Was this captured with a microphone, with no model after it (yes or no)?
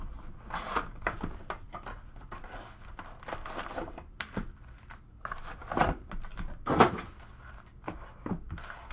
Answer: yes